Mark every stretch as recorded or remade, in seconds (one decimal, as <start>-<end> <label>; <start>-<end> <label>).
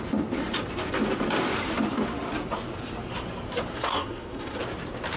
0.0-3.7 recorded; 3.7-4.6 remade; 4.6-5.2 recorded